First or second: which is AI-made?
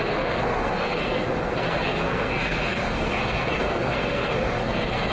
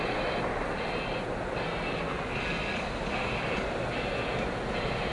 first